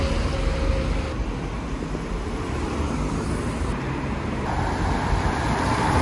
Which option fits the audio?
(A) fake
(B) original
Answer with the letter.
B